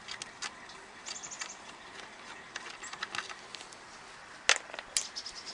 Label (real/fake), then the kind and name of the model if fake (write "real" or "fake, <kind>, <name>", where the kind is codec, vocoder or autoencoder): real